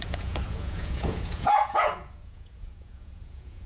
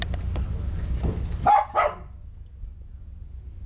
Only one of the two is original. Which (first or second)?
second